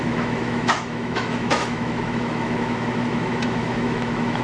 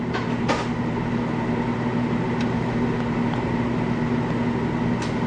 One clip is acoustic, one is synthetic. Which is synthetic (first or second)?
first